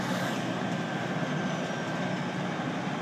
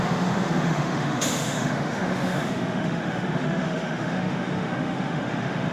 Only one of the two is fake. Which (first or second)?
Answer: second